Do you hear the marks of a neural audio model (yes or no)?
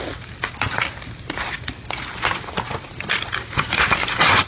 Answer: no